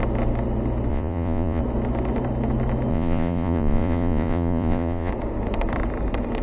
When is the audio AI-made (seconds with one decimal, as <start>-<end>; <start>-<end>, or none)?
0.9-1.6; 2.9-5.1